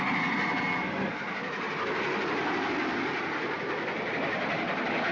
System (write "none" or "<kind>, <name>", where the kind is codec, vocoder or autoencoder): none